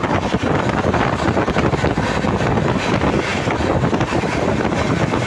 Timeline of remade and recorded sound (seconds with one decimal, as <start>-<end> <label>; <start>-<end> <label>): 0.0-5.3 recorded